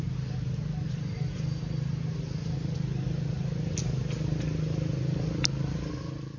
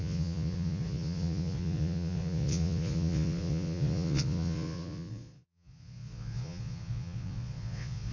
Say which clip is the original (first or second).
first